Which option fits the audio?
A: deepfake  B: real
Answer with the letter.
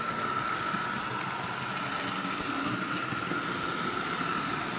B